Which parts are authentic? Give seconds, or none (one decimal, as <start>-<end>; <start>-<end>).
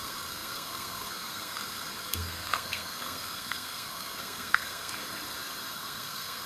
5.0-5.7